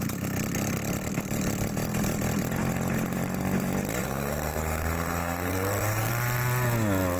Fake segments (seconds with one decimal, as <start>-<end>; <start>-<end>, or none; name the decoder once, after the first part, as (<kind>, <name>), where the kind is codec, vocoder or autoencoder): 4.0-6.1 (codec, SNAC)